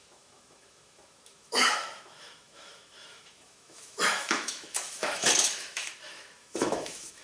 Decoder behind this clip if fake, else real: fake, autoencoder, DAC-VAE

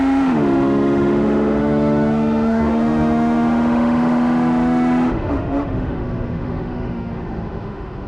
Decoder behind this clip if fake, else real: fake, autoencoder, DAC-VAE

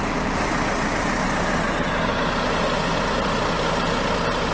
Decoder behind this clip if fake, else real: real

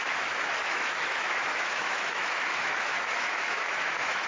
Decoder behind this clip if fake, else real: fake, autoencoder, DAC-VAE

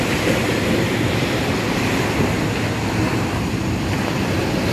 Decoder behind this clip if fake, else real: real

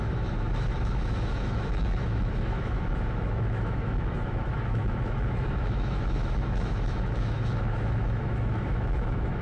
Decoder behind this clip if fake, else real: fake, autoencoder, DAC-VAE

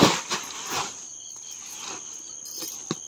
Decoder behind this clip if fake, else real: real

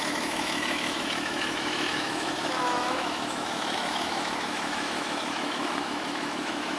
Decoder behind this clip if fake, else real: fake, autoencoder, DAC-VAE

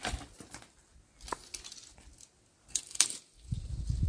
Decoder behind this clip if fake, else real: real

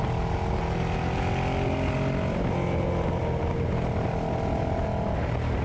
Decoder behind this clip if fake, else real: real